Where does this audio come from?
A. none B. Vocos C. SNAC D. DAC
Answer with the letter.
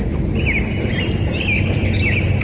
A